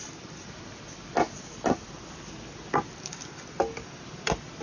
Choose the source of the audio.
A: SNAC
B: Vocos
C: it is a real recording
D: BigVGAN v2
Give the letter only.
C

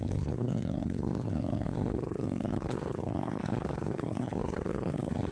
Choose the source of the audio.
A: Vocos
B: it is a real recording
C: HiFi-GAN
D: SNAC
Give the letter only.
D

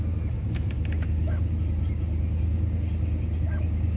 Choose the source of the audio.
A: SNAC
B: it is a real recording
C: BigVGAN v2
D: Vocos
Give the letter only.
B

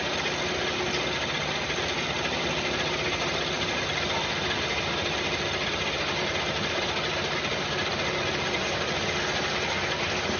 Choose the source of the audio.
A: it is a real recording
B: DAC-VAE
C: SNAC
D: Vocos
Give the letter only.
A